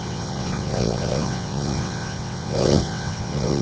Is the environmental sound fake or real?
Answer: fake